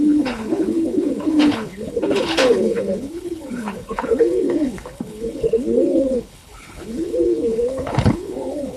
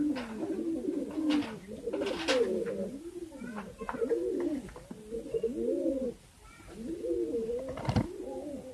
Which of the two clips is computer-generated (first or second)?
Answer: first